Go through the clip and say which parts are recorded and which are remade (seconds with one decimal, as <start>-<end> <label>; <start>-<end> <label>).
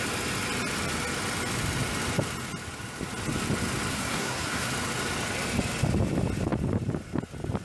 0.0-3.9 recorded; 3.9-4.7 remade; 4.7-7.6 recorded